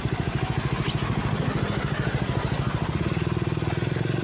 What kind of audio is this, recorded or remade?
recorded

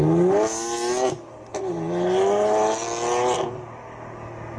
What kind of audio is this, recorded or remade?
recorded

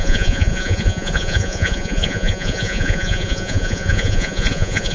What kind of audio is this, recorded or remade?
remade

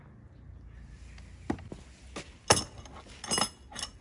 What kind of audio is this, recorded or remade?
recorded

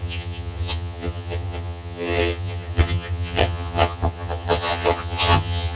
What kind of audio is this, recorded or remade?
remade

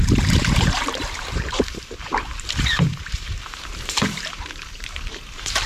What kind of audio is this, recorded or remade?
remade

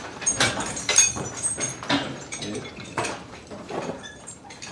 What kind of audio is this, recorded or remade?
remade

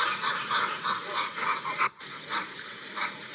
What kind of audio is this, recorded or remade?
remade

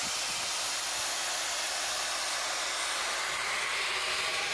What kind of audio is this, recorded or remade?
recorded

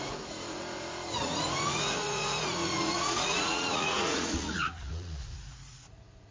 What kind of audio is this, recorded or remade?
remade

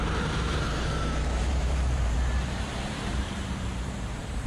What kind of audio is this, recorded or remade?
remade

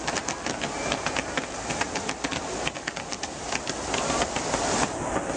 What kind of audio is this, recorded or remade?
recorded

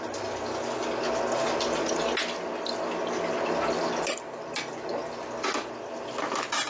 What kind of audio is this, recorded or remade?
recorded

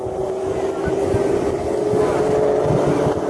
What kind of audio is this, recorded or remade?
recorded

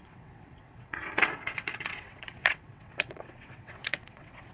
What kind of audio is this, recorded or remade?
remade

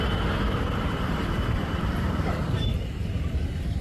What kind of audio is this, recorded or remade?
remade